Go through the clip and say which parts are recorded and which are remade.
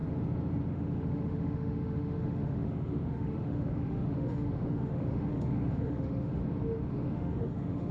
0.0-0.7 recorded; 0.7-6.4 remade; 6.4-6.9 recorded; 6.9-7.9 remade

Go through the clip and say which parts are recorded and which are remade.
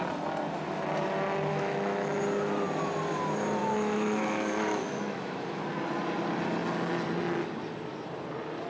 0.0-1.5 recorded; 1.5-2.2 remade; 2.2-3.6 recorded; 3.6-5.6 remade; 5.6-8.7 recorded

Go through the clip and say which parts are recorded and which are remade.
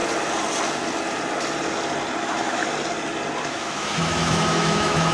0.0-2.2 recorded; 2.2-2.6 remade; 2.6-3.5 recorded; 3.5-5.1 remade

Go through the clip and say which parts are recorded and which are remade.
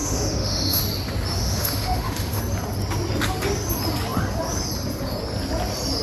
0.0-0.8 remade; 0.8-1.4 recorded; 1.4-2.4 remade; 2.4-6.0 recorded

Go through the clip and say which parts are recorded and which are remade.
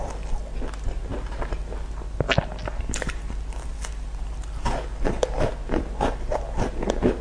0.0-7.2 recorded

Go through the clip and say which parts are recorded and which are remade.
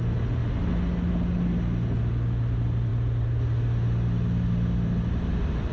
0.0-5.7 recorded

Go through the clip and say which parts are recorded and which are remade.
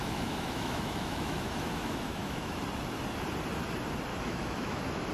0.0-2.6 remade; 2.6-4.1 recorded; 4.1-5.1 remade